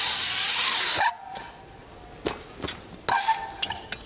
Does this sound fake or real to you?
real